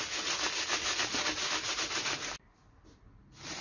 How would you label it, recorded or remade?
recorded